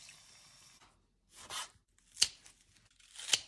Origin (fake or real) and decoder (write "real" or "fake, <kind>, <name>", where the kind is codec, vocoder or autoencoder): real